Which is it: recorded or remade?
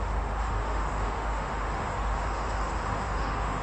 remade